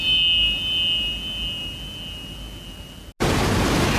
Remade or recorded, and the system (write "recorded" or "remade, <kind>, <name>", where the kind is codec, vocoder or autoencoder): recorded